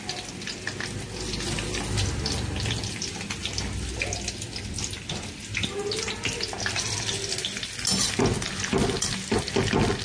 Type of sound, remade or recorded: recorded